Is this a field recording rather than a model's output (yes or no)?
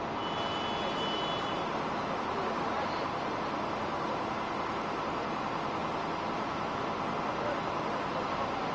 yes